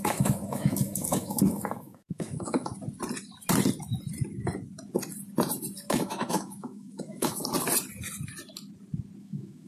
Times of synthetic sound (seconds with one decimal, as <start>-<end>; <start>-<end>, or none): 0.0-2.7; 5.9-7.4; 9.2-9.7